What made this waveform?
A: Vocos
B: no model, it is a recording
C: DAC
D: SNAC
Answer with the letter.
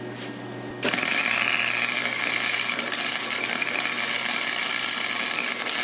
B